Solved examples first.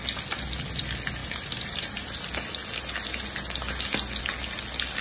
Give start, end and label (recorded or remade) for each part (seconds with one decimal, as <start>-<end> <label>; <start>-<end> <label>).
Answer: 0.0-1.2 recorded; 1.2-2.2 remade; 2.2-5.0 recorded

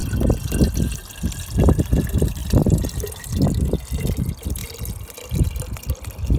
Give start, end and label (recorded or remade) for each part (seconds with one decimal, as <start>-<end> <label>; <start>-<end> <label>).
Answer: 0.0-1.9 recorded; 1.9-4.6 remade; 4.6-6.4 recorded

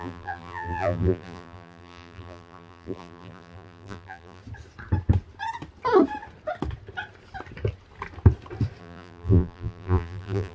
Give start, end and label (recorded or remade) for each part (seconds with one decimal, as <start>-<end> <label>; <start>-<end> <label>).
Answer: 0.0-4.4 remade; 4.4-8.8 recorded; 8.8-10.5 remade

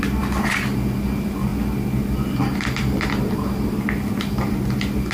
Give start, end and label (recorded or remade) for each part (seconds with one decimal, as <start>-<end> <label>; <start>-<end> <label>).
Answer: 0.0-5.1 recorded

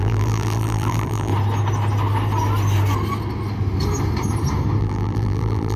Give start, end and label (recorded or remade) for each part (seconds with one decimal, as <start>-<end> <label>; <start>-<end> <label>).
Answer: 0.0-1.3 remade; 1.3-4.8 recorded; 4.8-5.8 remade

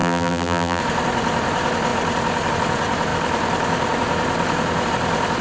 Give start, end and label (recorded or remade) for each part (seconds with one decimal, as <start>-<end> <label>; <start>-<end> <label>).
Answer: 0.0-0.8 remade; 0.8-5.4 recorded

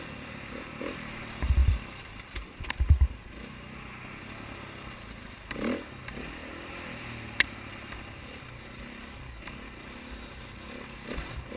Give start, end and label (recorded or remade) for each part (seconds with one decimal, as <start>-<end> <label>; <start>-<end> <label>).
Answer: 0.0-1.6 recorded; 1.6-2.7 remade; 2.7-11.6 recorded

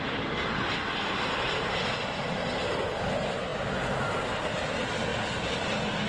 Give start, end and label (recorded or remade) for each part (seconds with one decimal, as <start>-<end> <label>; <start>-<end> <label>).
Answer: 0.0-6.1 recorded